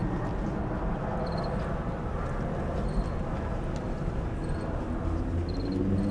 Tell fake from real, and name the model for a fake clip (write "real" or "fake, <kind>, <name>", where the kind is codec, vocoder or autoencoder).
real